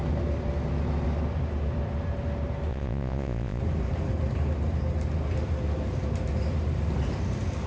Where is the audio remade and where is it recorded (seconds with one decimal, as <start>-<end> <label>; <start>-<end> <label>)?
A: 0.0-2.7 recorded; 2.7-3.6 remade; 3.6-7.7 recorded